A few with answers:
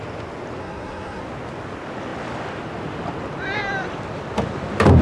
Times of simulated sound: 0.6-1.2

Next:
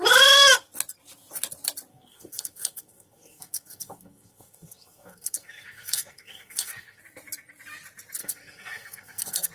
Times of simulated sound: 1.9-7.0; 8.2-9.5

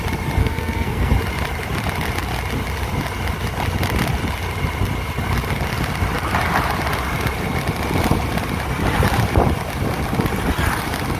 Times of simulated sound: 0.4-1.1

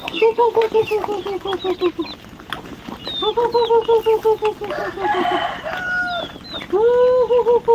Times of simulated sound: 0.0-0.8

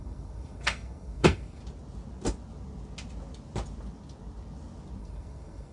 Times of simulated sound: 0.0-1.6; 5.0-5.7